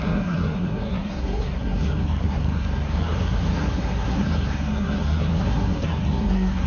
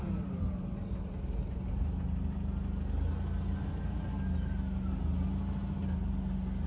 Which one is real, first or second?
second